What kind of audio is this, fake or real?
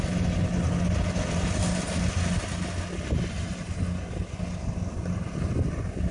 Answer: real